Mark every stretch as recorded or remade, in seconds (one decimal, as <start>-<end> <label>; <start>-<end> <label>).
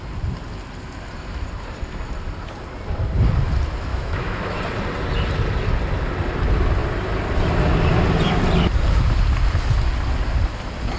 0.0-3.9 recorded; 3.9-4.6 remade; 4.6-11.0 recorded